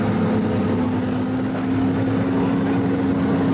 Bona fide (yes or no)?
yes